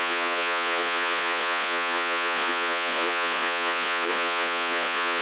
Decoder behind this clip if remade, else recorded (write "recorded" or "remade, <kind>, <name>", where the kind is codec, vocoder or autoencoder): remade, vocoder, Vocos